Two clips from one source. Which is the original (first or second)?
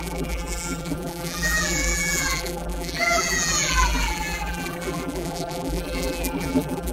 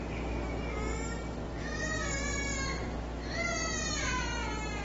second